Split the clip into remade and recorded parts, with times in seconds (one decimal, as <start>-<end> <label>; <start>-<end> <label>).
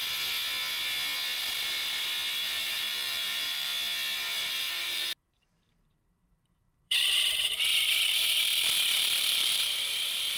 0.0-2.4 recorded; 2.4-3.7 remade; 3.7-4.6 recorded; 4.6-10.4 remade